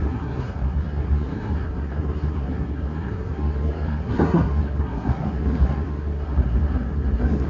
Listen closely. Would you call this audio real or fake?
fake